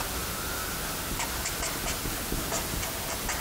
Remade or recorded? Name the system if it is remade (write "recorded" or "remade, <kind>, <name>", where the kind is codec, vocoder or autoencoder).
recorded